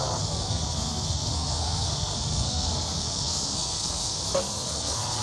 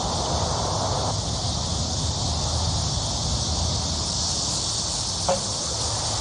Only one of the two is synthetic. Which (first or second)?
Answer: first